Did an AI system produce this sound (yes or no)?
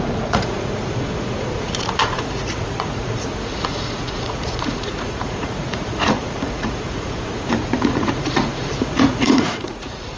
yes